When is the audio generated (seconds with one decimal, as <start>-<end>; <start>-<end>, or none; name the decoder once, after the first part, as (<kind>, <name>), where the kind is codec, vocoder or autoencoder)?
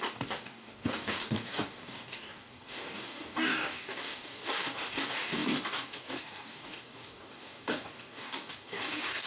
0.0-9.3 (codec, DAC)